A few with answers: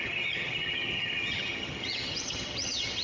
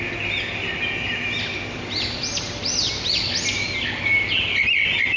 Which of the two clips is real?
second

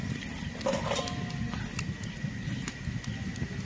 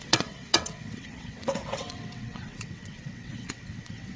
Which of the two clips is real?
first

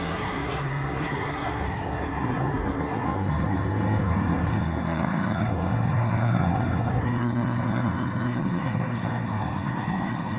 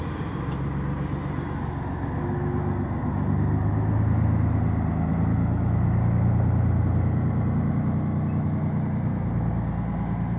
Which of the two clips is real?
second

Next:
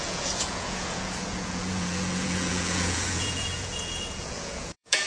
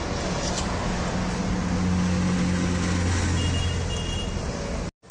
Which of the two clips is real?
second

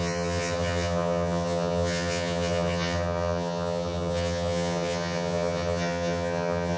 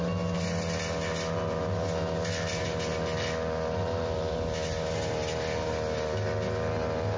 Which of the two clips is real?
second